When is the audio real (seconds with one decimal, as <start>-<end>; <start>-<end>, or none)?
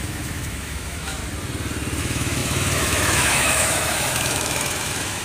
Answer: 1.2-2.0